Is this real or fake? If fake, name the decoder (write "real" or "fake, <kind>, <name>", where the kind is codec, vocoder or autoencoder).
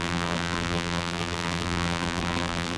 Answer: fake, vocoder, BigVGAN v2